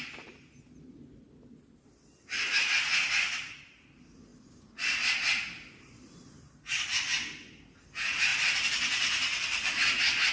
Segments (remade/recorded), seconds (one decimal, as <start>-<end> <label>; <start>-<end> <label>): 0.0-10.3 recorded